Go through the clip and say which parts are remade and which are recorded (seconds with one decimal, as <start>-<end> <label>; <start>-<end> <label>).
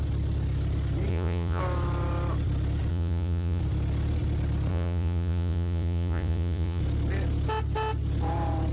0.0-1.1 recorded; 1.1-1.6 remade; 1.6-2.9 recorded; 2.9-3.6 remade; 3.6-4.7 recorded; 4.7-6.8 remade; 6.8-8.7 recorded